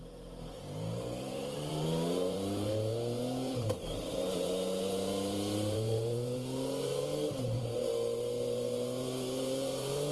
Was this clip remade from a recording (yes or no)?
yes